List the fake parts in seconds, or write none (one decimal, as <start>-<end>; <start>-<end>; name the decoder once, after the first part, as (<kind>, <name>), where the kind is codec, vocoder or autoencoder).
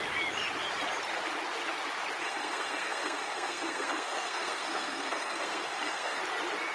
2.2-6.2 (codec, SNAC)